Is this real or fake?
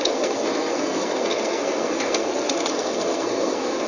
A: fake